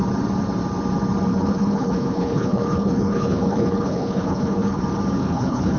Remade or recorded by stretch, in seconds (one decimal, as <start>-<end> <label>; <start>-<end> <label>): 0.0-1.3 recorded; 1.3-4.8 remade; 4.8-5.2 recorded; 5.2-5.8 remade